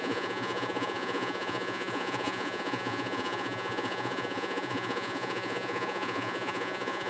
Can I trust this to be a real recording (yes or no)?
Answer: no